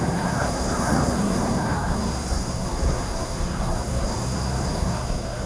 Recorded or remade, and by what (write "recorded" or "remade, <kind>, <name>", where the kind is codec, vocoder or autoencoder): remade, codec, SNAC